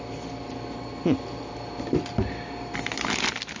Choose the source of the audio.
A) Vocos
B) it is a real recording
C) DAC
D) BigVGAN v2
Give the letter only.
B